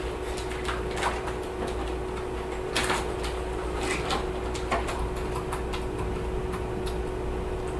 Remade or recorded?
recorded